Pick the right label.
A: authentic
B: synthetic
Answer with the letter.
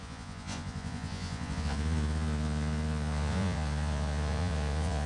B